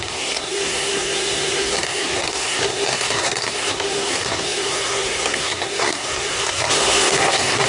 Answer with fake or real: fake